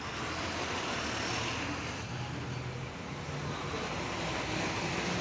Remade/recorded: recorded